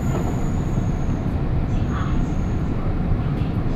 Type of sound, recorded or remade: remade